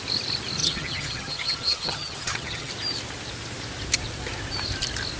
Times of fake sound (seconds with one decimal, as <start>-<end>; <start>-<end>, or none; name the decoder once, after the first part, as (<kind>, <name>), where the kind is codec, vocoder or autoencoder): 0.6-2.7 (vocoder, HiFi-GAN)